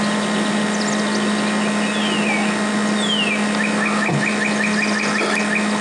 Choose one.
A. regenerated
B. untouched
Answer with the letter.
B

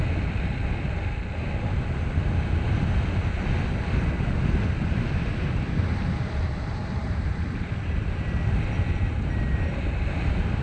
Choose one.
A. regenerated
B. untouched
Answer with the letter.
B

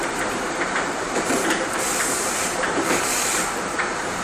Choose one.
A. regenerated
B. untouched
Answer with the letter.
A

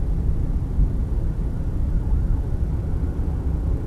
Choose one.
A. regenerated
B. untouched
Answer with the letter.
B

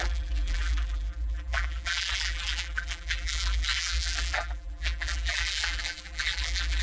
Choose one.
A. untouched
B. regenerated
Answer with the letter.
B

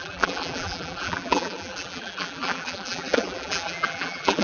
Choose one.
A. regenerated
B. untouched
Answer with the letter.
A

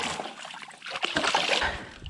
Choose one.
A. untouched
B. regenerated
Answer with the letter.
A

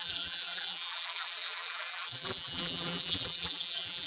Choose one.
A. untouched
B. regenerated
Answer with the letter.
B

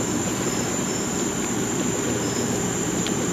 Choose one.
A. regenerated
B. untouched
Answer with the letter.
A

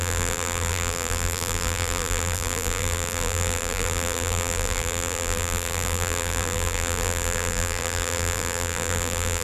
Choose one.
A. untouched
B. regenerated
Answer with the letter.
B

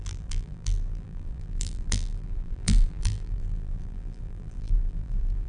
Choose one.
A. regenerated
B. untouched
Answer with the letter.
A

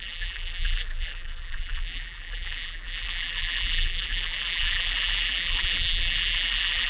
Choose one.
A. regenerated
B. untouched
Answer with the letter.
A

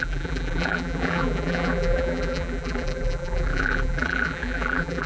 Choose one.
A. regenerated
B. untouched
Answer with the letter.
A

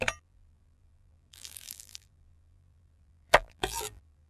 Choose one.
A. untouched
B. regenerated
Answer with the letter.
B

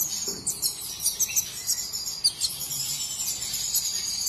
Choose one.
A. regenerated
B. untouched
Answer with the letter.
B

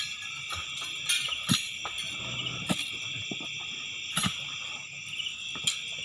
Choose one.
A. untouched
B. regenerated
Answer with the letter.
A